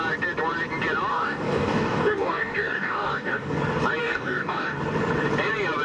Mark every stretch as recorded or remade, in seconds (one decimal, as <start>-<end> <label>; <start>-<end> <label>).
0.0-1.1 recorded; 1.1-3.6 remade; 3.6-4.0 recorded; 4.0-4.8 remade; 4.8-5.8 recorded

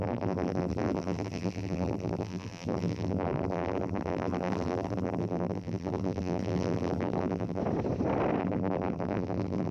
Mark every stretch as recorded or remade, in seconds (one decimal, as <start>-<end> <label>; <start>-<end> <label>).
0.0-7.6 remade; 7.6-8.4 recorded; 8.4-9.7 remade

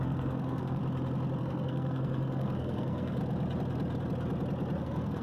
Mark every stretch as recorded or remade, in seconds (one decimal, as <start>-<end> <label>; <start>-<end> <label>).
0.0-0.8 remade; 0.8-1.4 recorded; 1.4-3.2 remade; 3.2-4.8 recorded; 4.8-5.2 remade

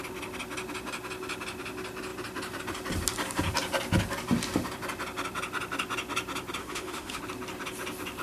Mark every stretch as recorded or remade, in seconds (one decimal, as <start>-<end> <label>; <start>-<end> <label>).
0.0-6.6 recorded; 6.6-7.2 remade; 7.2-8.2 recorded

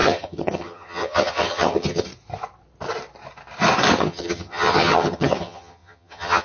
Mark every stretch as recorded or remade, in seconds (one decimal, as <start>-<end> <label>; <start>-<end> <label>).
0.0-2.1 remade; 2.1-4.0 recorded; 4.0-6.4 remade